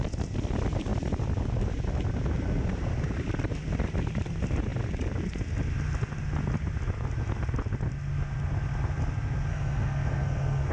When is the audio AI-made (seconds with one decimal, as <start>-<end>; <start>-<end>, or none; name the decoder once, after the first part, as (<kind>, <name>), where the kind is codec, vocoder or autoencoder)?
9.5-10.7 (codec, SNAC)